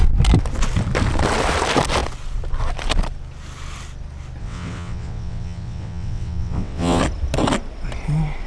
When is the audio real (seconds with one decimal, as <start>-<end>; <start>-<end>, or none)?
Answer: 0.0-4.4; 7.0-8.5